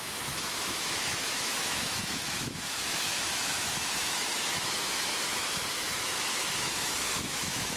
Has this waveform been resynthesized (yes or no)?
yes